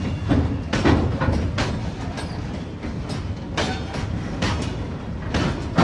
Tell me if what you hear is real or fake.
real